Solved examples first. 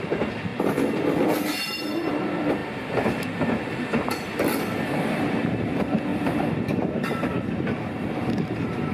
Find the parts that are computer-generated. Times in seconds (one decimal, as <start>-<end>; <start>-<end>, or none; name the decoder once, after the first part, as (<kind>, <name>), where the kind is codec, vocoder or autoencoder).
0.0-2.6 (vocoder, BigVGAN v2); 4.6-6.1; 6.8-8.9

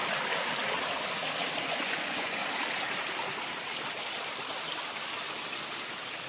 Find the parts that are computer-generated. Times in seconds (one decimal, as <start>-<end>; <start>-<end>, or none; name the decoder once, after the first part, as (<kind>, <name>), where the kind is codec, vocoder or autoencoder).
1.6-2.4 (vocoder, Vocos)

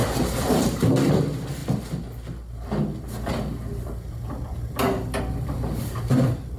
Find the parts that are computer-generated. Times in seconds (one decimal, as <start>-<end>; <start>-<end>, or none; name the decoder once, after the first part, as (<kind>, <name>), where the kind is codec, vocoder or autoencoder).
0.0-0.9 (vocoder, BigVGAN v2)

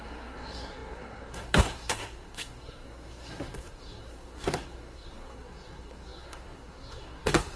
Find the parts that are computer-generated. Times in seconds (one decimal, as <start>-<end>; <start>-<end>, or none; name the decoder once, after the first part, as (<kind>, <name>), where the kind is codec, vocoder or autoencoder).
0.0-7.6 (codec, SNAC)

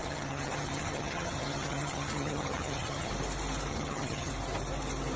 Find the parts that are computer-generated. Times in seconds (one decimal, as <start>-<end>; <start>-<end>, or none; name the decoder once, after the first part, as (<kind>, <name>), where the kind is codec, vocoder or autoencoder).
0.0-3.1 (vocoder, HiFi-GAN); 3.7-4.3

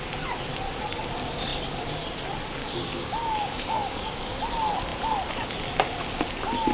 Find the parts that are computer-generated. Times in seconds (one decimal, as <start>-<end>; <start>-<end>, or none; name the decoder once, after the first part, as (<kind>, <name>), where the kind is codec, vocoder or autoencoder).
2.6-4.4 (codec, DAC)

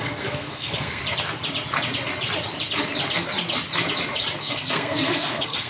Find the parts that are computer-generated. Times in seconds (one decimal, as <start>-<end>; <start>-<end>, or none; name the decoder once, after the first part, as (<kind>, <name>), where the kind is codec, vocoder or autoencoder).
0.0-1.0 (codec, SNAC); 4.4-5.7

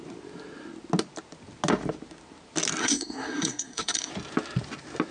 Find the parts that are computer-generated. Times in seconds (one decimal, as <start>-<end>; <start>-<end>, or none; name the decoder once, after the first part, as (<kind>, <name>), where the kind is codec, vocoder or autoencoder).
2.8-4.1 (codec, SNAC)